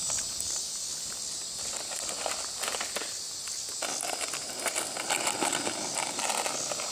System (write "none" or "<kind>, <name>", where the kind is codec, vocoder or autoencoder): none